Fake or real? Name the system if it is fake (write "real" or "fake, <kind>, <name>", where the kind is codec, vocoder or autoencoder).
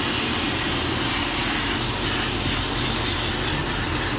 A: real